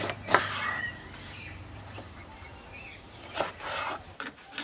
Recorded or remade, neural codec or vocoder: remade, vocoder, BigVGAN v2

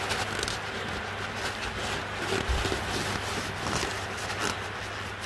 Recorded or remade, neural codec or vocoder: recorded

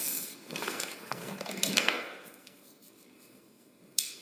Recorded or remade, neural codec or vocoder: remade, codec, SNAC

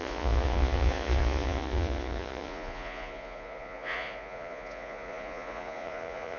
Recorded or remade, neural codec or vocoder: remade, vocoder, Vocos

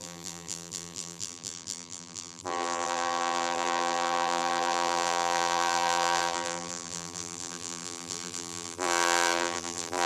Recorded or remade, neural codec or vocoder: remade, vocoder, BigVGAN v2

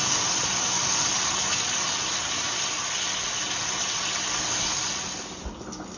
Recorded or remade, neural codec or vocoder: recorded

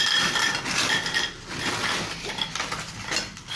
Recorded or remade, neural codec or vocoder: recorded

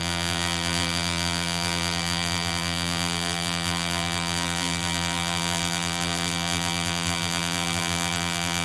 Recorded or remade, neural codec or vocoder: remade, vocoder, BigVGAN v2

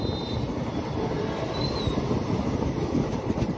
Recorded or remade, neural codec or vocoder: recorded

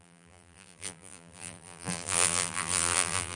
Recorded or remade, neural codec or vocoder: remade, vocoder, BigVGAN v2